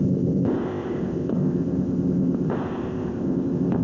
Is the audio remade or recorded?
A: remade